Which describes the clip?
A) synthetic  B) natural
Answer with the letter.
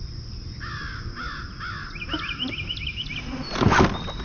B